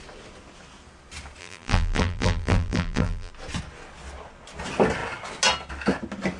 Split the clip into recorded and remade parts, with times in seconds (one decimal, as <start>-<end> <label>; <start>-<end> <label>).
0.0-1.4 recorded; 1.4-3.3 remade; 3.3-6.4 recorded